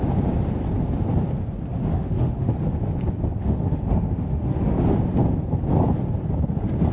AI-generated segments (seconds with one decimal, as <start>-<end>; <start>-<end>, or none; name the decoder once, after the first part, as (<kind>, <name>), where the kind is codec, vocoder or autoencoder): 1.7-2.5 (autoencoder, DAC-VAE); 3.4-4.8